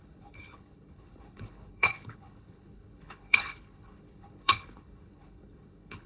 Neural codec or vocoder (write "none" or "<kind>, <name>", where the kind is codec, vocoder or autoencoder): codec, HILCodec